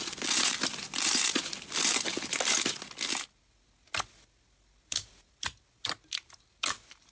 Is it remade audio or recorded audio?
recorded